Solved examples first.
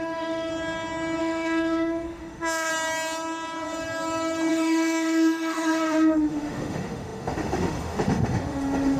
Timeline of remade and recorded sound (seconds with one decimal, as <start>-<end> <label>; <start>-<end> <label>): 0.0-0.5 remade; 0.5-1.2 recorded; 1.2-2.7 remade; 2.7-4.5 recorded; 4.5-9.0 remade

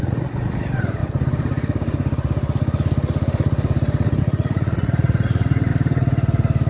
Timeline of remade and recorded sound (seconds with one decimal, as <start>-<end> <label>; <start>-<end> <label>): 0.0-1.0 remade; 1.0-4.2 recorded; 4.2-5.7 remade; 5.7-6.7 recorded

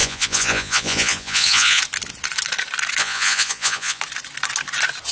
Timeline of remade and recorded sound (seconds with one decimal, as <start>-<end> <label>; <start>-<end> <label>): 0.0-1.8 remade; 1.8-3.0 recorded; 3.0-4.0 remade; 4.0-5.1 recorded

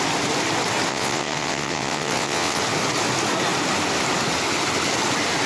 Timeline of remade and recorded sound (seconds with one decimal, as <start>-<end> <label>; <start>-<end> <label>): 0.0-0.9 recorded; 0.9-2.6 remade; 2.6-5.5 recorded

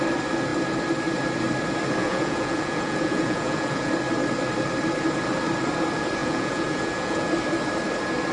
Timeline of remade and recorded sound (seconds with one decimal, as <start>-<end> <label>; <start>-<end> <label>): 0.0-2.0 recorded; 2.0-3.9 remade; 3.9-6.2 recorded; 6.2-7.3 remade; 7.3-8.3 recorded